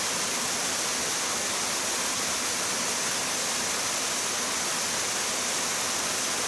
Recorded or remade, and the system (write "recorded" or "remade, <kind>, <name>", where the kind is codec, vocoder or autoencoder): recorded